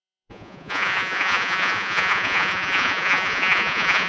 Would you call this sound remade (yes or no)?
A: yes